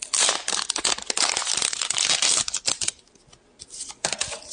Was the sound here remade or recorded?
recorded